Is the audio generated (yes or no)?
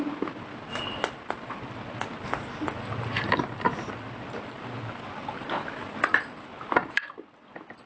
no